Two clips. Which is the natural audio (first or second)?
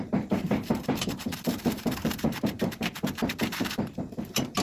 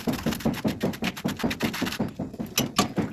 second